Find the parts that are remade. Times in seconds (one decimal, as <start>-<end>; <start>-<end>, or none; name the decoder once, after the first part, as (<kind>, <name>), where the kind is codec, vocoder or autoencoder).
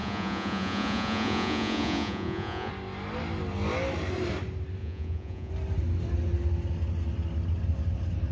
0.0-2.7 (vocoder, Vocos); 4.8-5.5